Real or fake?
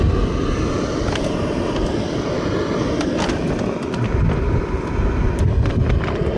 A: real